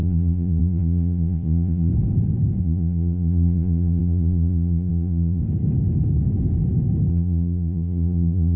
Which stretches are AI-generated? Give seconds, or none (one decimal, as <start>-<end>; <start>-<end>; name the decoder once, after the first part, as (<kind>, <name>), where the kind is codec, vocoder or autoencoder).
0.0-1.9 (vocoder, Vocos); 2.6-5.4; 7.1-8.6